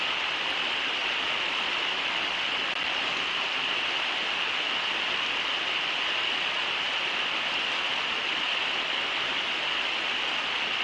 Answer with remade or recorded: recorded